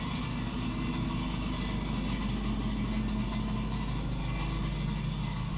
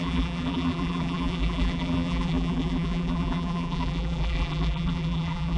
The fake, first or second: second